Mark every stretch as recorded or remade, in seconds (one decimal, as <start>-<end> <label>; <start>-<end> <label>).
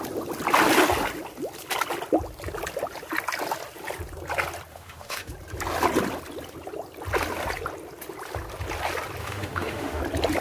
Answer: 0.0-4.7 recorded; 4.7-5.3 remade; 5.3-9.2 recorded; 9.2-10.0 remade; 10.0-10.4 recorded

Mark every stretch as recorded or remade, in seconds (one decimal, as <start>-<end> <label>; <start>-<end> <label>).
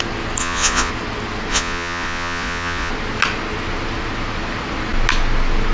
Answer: 0.0-0.4 recorded; 0.4-0.9 remade; 0.9-1.5 recorded; 1.5-2.9 remade; 2.9-5.7 recorded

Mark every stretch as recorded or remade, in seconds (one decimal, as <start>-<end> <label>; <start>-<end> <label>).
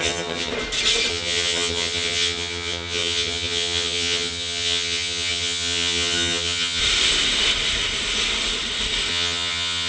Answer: 0.0-0.5 remade; 0.5-1.1 recorded; 1.1-6.8 remade; 6.8-9.1 recorded; 9.1-9.9 remade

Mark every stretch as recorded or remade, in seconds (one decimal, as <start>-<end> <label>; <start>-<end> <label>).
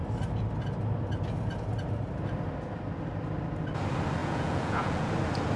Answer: 0.0-4.2 recorded; 4.2-5.1 remade; 5.1-5.6 recorded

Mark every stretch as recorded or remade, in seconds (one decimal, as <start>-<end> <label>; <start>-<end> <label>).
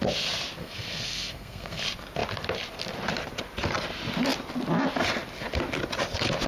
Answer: 0.0-0.6 recorded; 0.6-1.8 remade; 1.8-6.5 recorded